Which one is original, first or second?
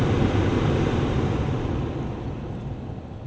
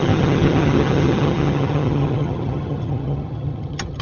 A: first